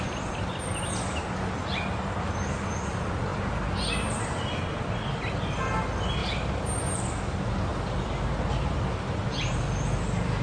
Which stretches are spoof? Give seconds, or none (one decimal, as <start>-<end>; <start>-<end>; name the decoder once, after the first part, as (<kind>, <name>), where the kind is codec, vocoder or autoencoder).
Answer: 6.2-6.8 (vocoder, BigVGAN v2)